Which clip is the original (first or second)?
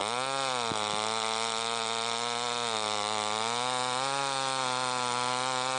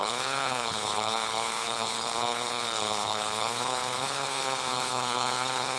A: first